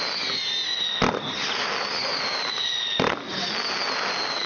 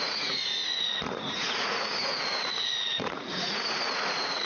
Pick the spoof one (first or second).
second